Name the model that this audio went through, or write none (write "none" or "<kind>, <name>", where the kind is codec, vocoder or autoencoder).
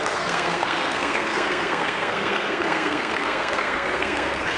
codec, SNAC